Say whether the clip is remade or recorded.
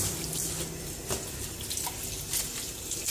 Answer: recorded